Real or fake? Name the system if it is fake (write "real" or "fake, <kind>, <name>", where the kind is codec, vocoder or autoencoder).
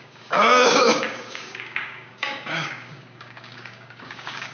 fake, codec, DAC